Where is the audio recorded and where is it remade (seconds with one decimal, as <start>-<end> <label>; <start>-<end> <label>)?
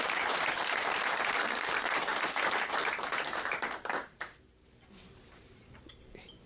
0.0-6.5 remade